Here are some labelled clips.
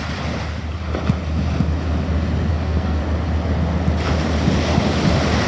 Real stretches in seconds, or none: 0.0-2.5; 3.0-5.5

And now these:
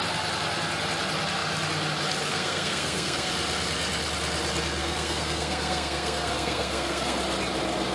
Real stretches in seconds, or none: 0.0-2.3; 3.3-4.8; 7.2-7.9

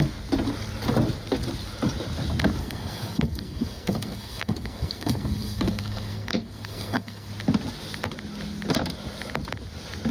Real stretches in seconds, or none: 0.0-2.6; 7.3-10.1

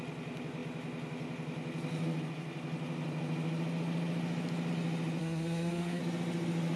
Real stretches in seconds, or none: 0.0-5.2; 6.0-6.8

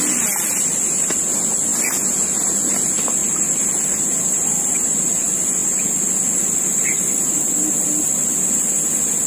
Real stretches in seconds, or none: 0.0-9.3

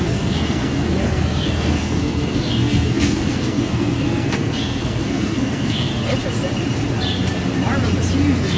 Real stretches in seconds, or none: 5.9-8.6